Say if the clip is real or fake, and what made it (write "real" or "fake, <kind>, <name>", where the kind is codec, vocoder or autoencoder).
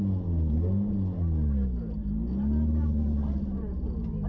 real